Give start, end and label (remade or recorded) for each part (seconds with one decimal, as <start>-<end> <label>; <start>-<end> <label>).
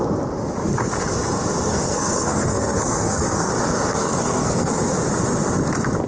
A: 0.0-1.7 recorded; 1.7-3.5 remade; 3.5-3.9 recorded; 3.9-4.7 remade; 4.7-6.1 recorded